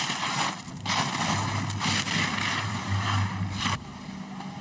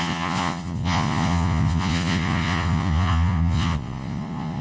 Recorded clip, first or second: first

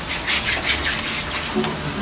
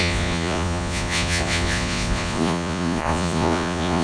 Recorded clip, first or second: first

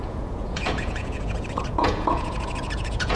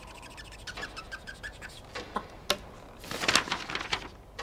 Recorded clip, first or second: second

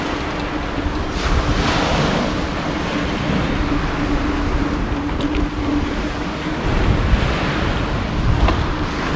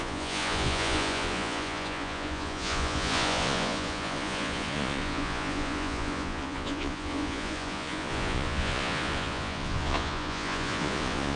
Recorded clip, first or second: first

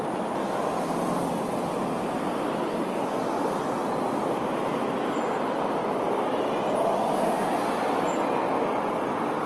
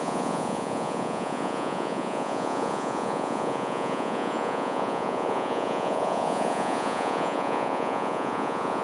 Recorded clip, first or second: first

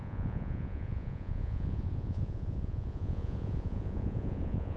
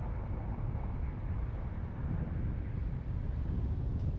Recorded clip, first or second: second